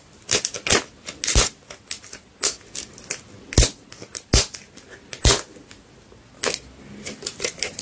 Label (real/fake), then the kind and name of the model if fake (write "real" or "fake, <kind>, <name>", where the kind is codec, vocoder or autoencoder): real